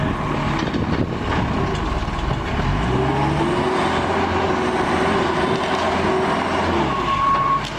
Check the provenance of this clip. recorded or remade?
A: recorded